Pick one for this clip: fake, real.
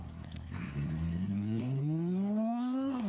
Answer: fake